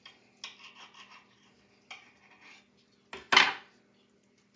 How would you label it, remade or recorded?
recorded